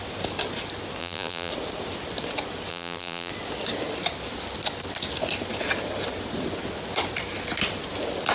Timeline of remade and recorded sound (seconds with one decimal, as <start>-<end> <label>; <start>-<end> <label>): 0.0-1.0 recorded; 1.0-1.5 remade; 1.5-2.7 recorded; 2.7-3.3 remade; 3.3-8.3 recorded